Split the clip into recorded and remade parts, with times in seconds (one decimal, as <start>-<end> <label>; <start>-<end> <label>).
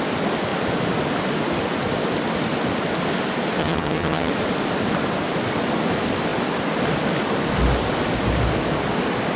0.0-3.6 recorded; 3.6-4.3 remade; 4.3-9.4 recorded